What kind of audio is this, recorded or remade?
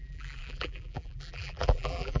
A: remade